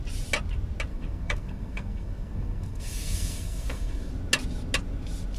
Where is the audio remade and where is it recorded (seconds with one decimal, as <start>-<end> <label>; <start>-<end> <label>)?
0.0-0.9 recorded; 0.9-4.1 remade; 4.1-5.4 recorded